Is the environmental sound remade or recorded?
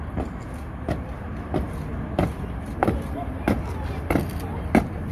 recorded